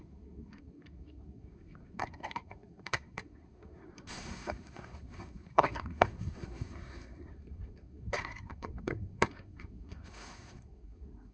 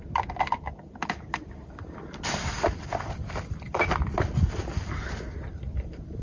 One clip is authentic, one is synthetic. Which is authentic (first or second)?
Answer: second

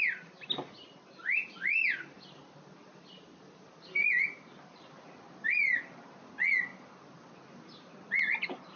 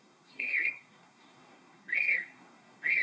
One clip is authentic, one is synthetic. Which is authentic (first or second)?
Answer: first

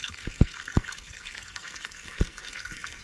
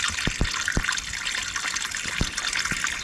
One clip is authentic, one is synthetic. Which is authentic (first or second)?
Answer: second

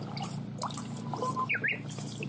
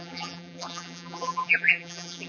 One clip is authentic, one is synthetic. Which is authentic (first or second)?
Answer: first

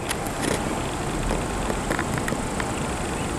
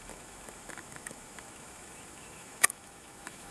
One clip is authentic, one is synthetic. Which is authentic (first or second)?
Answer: first